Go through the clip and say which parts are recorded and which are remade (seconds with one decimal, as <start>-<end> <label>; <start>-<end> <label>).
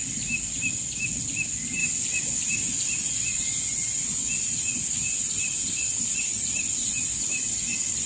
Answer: 0.0-8.1 recorded